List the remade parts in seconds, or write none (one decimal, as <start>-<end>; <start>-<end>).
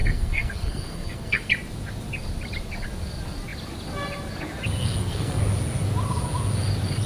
0.0-1.5; 4.8-5.4